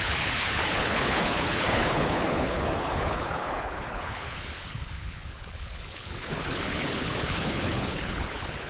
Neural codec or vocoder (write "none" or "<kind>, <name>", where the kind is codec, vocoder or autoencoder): codec, HILCodec